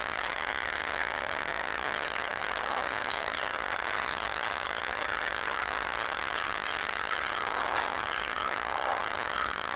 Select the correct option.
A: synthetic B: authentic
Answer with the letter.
A